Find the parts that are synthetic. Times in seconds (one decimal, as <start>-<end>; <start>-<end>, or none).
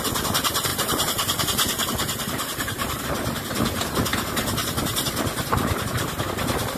0.7-3.0; 5.5-6.3